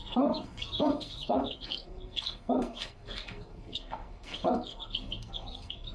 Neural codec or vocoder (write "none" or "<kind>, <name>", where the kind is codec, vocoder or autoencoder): codec, SNAC